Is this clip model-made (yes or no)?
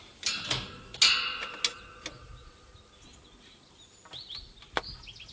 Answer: no